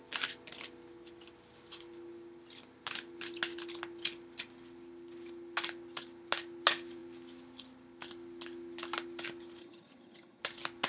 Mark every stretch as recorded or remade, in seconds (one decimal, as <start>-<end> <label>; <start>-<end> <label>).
0.0-9.6 recorded; 9.6-10.4 remade; 10.4-10.9 recorded